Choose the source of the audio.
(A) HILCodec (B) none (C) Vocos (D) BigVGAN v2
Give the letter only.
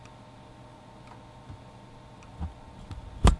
B